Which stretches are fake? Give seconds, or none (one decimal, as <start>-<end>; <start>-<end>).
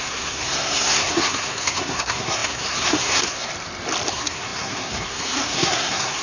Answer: 0.0-3.5; 4.1-6.2